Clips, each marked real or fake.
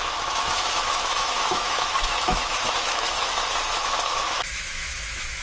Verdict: fake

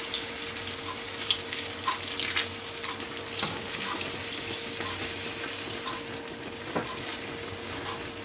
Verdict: real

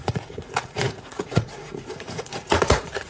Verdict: fake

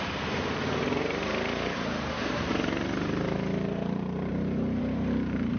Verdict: fake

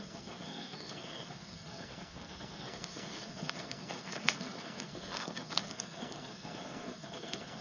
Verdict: fake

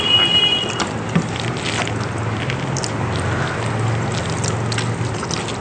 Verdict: real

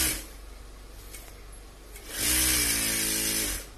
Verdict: real